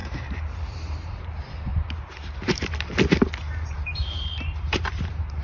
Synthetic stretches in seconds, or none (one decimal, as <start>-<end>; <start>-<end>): 0.0-1.7; 2.2-2.9; 3.5-5.4